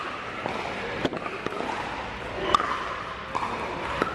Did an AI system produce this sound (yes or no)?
no